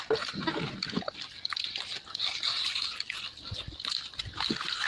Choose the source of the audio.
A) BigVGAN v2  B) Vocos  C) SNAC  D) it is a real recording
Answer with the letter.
D